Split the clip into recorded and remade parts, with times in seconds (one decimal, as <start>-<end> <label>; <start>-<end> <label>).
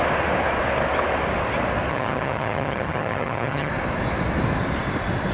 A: 0.0-1.9 recorded; 1.9-3.7 remade; 3.7-5.3 recorded